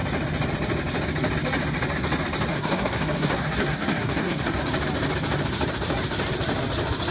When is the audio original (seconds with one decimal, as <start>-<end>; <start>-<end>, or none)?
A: 0.0-2.5; 4.6-7.1